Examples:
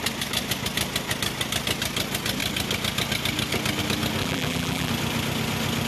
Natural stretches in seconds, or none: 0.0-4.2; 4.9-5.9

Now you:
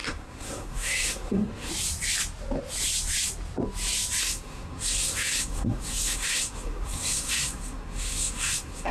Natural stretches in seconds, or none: 1.7-4.2

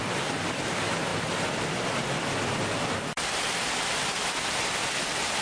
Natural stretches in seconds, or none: 0.0-5.4

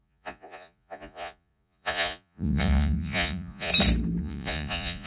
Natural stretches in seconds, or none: 3.7-4.2

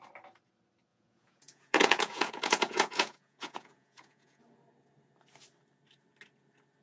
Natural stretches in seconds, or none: 0.0-0.9; 4.4-6.8

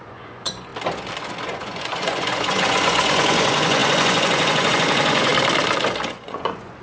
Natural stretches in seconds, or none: 0.7-1.4; 5.3-6.1